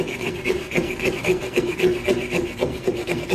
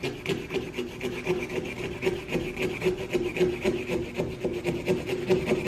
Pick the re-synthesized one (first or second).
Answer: first